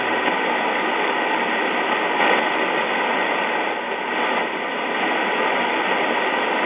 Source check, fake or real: real